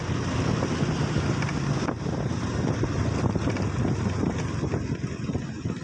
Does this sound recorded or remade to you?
recorded